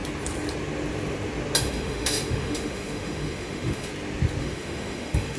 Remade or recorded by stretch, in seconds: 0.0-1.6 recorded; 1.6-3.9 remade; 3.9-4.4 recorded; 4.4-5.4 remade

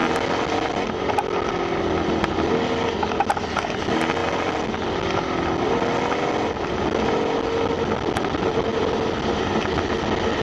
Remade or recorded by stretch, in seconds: 0.0-10.4 recorded

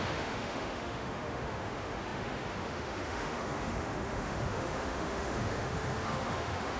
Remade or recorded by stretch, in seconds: 0.0-6.8 remade

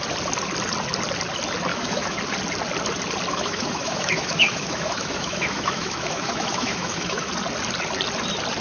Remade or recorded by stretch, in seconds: 0.0-1.7 recorded; 1.7-2.2 remade; 2.2-3.3 recorded; 3.3-7.3 remade; 7.3-8.6 recorded

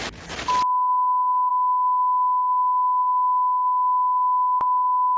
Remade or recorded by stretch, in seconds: 0.0-1.5 recorded; 1.5-4.6 remade; 4.6-5.2 recorded